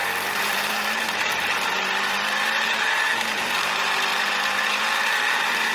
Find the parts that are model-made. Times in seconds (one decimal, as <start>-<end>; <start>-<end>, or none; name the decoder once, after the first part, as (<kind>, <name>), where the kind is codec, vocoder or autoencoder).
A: 0.0-5.7 (vocoder, BigVGAN v2)